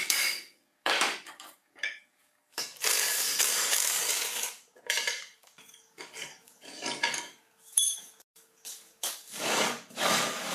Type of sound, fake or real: fake